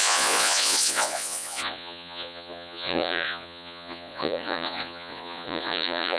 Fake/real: fake